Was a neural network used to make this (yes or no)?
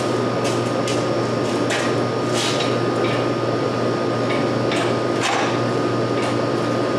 no